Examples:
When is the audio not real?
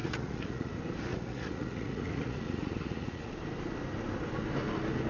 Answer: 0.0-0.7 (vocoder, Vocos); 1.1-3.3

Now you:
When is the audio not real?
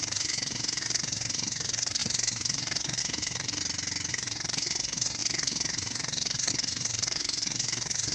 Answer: 0.0-3.6 (codec, SNAC); 4.1-8.1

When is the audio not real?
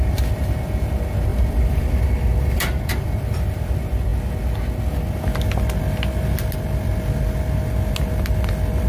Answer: 1.3-3.6 (vocoder, BigVGAN v2)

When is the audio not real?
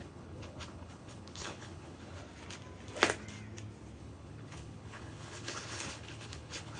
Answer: 0.0-2.2 (codec, HILCodec); 4.0-6.8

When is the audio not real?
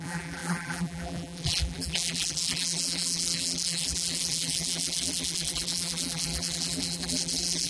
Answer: 0.0-7.7 (vocoder, BigVGAN v2)